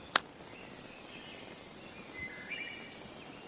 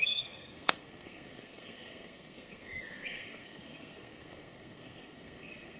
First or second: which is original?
first